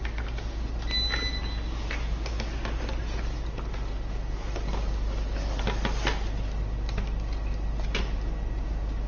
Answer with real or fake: real